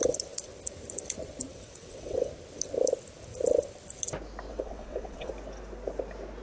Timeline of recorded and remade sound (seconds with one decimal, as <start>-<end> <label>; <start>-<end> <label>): 0.0-1.5 recorded; 1.5-2.3 remade; 2.3-4.5 recorded; 4.5-5.3 remade; 5.3-6.4 recorded